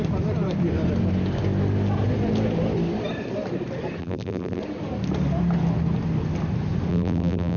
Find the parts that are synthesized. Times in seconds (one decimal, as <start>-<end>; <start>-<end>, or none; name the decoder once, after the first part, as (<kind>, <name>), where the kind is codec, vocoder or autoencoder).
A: 4.0-4.6 (vocoder, BigVGAN v2); 6.9-7.6